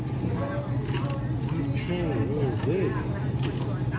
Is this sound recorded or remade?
recorded